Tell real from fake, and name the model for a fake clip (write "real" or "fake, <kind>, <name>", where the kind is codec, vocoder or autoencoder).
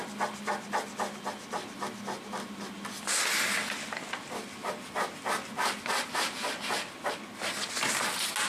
real